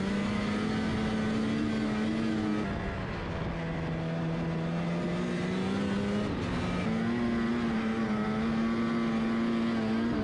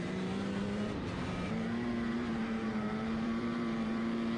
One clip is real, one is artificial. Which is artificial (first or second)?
second